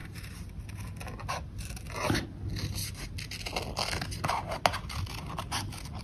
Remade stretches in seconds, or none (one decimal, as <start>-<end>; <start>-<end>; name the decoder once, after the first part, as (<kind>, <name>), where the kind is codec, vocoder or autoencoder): none